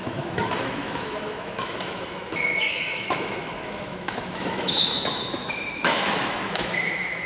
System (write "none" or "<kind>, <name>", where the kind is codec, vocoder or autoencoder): autoencoder, DAC-VAE